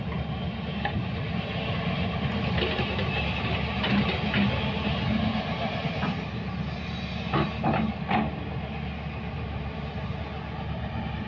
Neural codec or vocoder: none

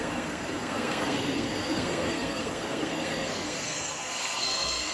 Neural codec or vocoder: codec, SNAC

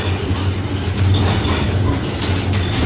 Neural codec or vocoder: none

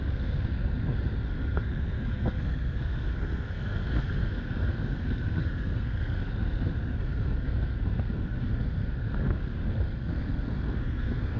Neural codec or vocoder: codec, SNAC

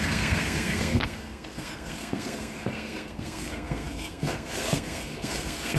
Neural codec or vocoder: codec, SNAC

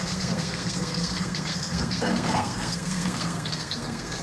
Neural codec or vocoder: codec, SNAC